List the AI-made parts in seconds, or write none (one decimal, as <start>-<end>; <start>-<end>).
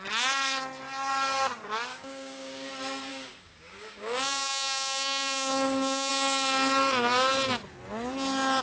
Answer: 1.9-2.7; 3.1-6.1